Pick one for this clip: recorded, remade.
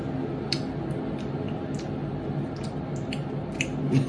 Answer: recorded